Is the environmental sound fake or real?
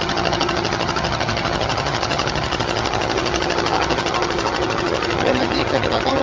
fake